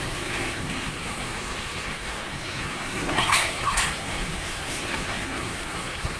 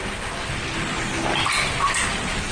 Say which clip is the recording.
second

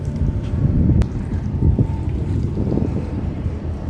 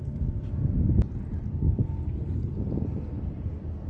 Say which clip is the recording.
second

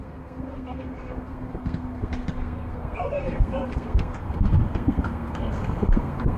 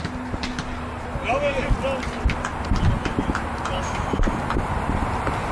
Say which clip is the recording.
second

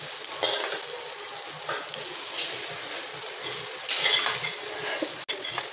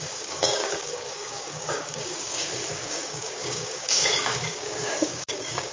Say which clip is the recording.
first